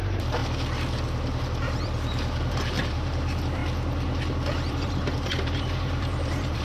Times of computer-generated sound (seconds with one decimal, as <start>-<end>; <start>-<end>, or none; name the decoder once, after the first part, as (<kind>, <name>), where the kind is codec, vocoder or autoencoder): 0.0-0.4 (vocoder, BigVGAN v2); 1.4-3.6; 4.7-6.6

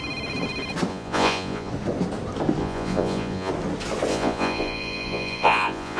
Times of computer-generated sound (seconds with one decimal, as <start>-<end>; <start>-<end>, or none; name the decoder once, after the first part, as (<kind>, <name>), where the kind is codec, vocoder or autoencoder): 0.9-1.7 (vocoder, Vocos); 2.6-3.5; 4.1-6.0

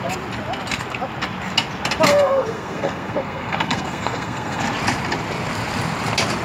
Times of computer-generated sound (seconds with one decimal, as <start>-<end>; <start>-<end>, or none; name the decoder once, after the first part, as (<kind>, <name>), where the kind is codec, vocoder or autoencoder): 2.1-4.6 (codec, SNAC)

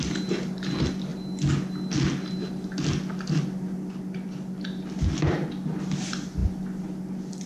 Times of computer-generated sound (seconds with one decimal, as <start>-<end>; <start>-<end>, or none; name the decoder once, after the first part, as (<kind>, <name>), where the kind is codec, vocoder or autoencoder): none

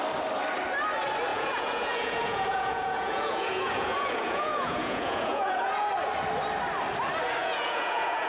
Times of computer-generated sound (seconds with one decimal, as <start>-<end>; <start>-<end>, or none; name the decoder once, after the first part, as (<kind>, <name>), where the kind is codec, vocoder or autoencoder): 1.3-5.9 (vocoder, Vocos); 7.4-8.3

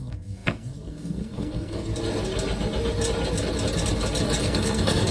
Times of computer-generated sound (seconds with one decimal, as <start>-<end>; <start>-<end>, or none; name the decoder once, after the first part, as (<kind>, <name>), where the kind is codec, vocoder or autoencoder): 0.0-1.9 (codec, SNAC); 4.4-5.1